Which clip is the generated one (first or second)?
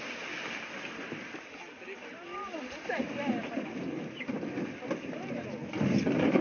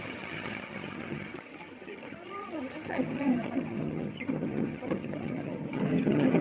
second